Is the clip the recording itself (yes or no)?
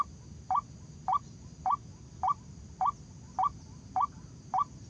yes